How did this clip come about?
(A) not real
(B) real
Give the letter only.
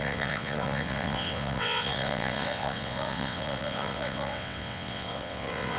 A